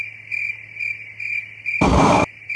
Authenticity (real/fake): real